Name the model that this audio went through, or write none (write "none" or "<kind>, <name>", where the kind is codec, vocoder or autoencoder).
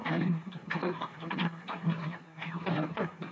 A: codec, SNAC